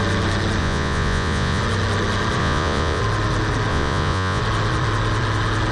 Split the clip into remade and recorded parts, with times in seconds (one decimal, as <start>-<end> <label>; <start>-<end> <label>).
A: 0.0-0.6 recorded; 0.6-1.6 remade; 1.6-2.4 recorded; 2.4-3.0 remade; 3.0-3.7 recorded; 3.7-4.4 remade; 4.4-5.7 recorded